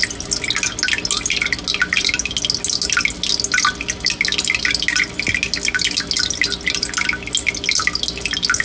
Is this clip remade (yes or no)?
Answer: no